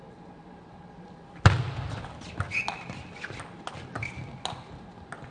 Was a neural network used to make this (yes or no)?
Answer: no